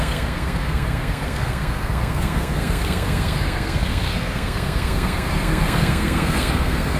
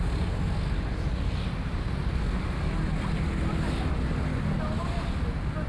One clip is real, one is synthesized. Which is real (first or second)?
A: second